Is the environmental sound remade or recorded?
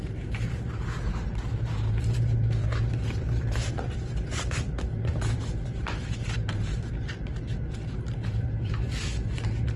remade